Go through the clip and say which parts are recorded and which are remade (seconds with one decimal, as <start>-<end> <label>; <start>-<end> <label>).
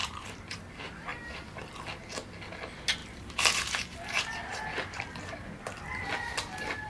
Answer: 0.0-0.6 remade; 0.6-1.1 recorded; 1.1-1.6 remade; 1.6-3.0 recorded; 3.0-5.0 remade; 5.0-6.9 recorded